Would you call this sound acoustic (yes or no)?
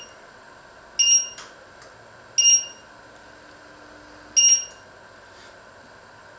yes